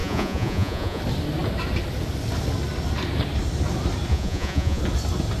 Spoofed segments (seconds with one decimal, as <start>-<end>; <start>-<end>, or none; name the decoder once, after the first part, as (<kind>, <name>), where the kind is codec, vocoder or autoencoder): 0.0-1.0 (vocoder, Vocos); 4.1-4.8